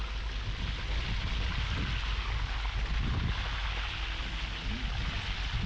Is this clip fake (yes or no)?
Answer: no